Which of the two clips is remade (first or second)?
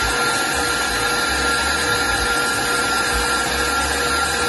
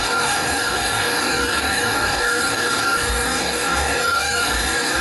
second